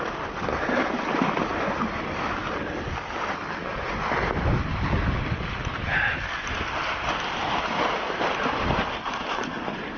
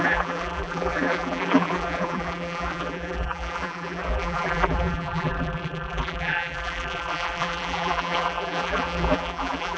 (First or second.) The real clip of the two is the first